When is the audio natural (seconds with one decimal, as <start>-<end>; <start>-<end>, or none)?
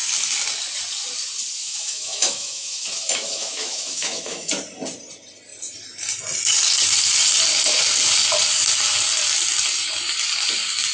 0.0-1.6; 4.5-10.9